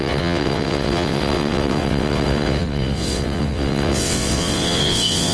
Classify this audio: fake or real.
fake